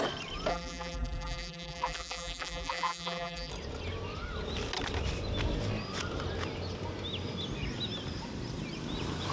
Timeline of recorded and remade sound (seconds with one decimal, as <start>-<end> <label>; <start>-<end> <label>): 0.0-0.5 recorded; 0.5-3.5 remade; 3.5-9.3 recorded